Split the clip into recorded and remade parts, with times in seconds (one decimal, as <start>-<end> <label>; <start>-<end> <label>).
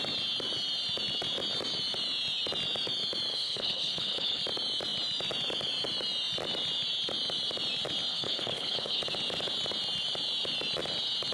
0.0-3.3 recorded; 3.3-4.4 remade; 4.4-8.1 recorded; 8.1-9.0 remade; 9.0-11.3 recorded